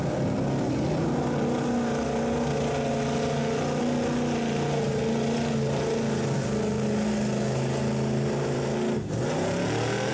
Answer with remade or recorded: recorded